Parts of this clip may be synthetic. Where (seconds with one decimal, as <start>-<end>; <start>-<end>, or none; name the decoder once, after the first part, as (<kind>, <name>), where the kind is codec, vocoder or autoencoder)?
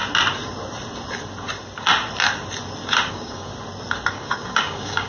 3.1-3.5 (codec, DAC); 4.1-5.1